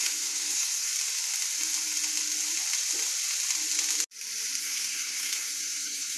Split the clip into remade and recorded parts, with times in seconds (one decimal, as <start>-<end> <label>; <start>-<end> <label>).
0.0-0.9 remade; 0.9-4.6 recorded; 4.6-6.2 remade

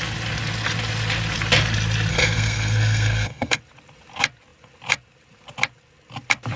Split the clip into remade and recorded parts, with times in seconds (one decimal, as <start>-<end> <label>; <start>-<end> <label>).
0.0-2.1 recorded; 2.1-3.6 remade; 3.6-6.6 recorded

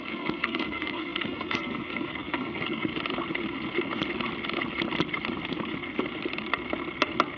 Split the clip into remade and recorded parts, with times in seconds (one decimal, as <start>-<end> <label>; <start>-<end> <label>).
0.0-2.9 remade; 2.9-7.4 recorded

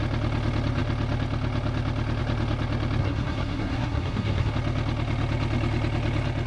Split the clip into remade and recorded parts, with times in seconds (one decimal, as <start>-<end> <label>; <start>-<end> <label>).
0.0-3.0 recorded; 3.0-4.5 remade; 4.5-6.5 recorded

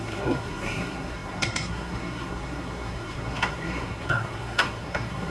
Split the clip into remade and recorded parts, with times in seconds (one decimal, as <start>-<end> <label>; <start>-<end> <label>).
0.0-5.3 remade